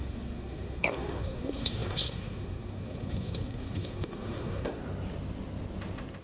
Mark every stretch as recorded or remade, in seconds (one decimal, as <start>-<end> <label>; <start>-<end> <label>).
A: 0.0-4.8 remade; 4.8-6.2 recorded

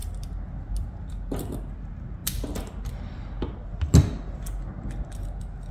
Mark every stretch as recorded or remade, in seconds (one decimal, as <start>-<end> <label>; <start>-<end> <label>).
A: 0.0-5.7 recorded

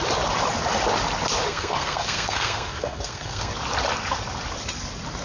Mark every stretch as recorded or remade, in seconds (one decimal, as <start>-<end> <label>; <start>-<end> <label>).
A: 0.0-1.5 recorded; 1.5-3.5 remade; 3.5-5.2 recorded